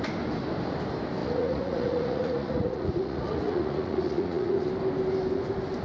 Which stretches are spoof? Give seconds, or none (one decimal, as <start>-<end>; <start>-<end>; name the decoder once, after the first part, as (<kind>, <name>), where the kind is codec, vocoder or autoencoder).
1.2-4.7 (vocoder, Vocos)